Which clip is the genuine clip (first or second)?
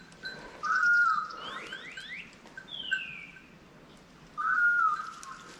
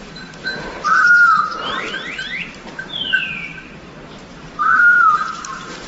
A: first